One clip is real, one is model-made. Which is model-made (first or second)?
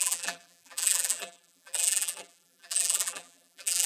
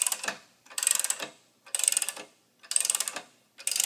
first